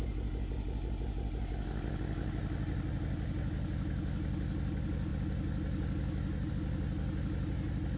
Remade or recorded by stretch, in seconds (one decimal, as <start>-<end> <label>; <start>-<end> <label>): 0.0-8.0 recorded